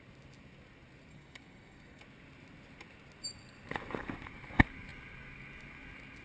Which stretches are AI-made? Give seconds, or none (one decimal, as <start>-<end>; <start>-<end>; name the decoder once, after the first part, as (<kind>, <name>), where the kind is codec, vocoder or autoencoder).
1.1-2.0 (codec, DAC)